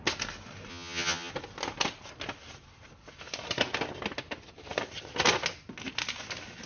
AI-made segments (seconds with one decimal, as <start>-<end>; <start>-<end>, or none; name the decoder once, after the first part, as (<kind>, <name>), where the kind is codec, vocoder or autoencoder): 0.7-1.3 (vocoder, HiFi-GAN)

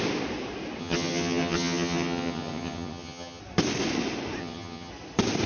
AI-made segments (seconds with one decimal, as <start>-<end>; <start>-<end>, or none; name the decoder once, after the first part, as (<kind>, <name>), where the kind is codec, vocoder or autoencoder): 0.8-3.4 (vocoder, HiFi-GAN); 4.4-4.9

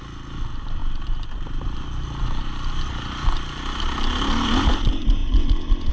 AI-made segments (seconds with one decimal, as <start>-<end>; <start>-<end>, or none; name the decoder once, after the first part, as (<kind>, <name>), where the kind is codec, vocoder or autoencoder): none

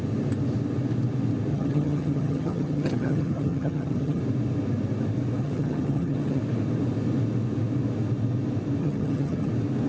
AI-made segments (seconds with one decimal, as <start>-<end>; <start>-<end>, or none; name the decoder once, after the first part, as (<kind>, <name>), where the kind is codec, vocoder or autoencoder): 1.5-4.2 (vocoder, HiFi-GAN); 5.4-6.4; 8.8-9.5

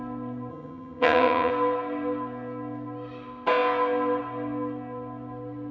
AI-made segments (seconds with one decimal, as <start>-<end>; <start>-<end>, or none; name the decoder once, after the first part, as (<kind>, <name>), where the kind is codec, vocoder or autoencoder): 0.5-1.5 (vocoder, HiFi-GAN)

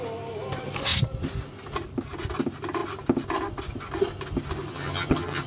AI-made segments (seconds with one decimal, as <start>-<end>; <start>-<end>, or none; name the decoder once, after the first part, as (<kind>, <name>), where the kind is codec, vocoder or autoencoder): 4.7-5.5 (vocoder, HiFi-GAN)

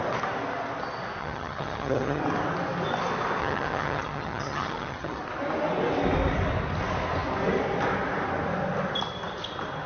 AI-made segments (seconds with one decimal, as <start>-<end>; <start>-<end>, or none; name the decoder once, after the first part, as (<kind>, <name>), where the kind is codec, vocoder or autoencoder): 1.2-2.2 (vocoder, HiFi-GAN); 3.4-5.2

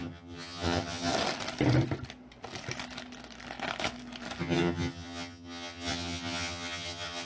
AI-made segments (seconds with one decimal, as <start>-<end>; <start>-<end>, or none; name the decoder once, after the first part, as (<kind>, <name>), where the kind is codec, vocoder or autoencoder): 0.0-1.1 (vocoder, HiFi-GAN); 4.4-7.3